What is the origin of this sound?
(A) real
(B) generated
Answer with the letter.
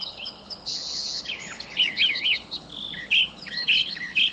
B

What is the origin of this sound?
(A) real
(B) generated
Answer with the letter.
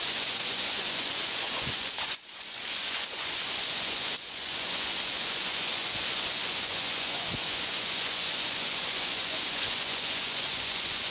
B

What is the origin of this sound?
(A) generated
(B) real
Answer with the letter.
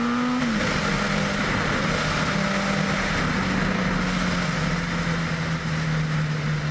B